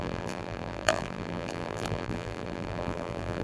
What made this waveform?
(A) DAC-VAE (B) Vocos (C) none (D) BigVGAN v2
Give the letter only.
D